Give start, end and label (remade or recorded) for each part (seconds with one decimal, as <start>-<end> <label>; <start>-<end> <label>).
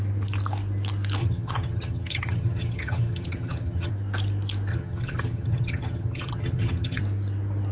0.0-1.2 recorded; 1.2-3.9 remade; 3.9-4.7 recorded; 4.7-7.0 remade; 7.0-7.7 recorded